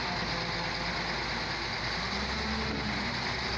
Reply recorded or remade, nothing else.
recorded